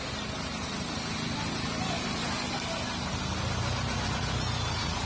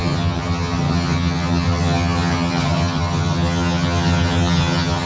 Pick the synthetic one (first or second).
second